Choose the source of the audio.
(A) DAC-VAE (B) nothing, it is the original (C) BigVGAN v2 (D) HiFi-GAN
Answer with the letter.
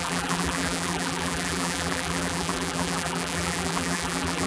C